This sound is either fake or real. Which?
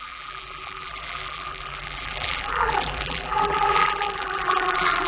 fake